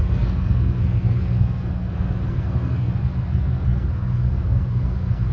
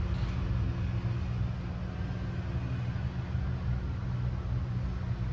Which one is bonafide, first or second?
second